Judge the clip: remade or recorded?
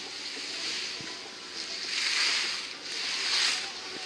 recorded